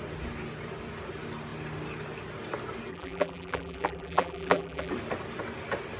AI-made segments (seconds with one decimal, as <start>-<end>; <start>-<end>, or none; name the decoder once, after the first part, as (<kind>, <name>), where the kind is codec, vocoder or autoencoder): 2.9-4.9 (vocoder, BigVGAN v2)